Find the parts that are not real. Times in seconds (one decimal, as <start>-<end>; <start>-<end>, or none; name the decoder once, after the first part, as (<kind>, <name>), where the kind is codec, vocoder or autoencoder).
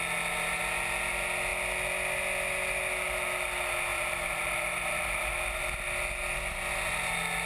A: 3.9-5.3 (vocoder, BigVGAN v2)